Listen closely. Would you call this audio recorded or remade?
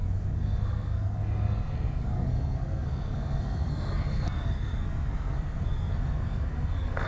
remade